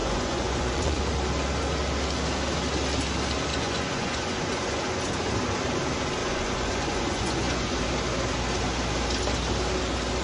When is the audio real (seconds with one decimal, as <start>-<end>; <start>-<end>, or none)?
1.0-3.5; 5.1-6.2; 7.8-10.2